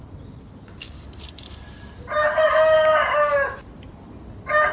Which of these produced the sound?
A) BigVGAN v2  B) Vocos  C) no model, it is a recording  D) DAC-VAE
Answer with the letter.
C